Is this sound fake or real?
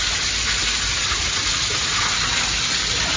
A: real